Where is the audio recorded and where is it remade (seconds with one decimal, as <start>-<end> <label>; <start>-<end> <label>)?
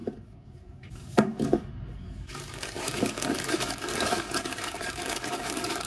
0.0-5.9 remade